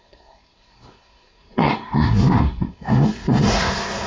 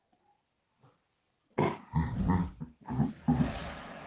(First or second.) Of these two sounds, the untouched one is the second